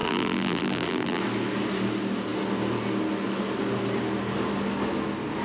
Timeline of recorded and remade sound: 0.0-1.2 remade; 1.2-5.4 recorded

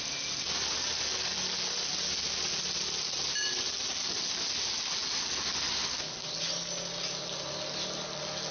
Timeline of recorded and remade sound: 0.0-8.5 recorded

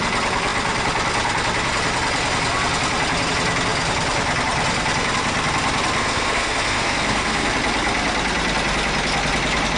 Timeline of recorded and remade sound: 0.0-6.0 recorded; 6.0-7.5 remade; 7.5-9.8 recorded

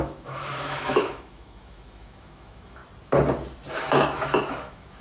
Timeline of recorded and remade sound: 0.0-2.8 remade; 2.8-3.7 recorded; 3.7-5.0 remade

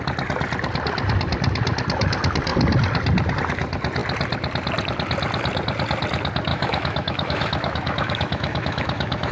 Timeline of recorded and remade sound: 0.0-6.5 recorded; 6.5-9.3 remade

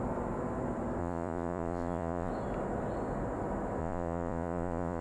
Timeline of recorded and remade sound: 0.0-1.0 recorded; 1.0-2.3 remade; 2.3-3.8 recorded; 3.8-5.0 remade